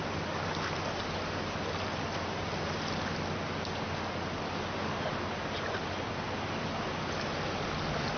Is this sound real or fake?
real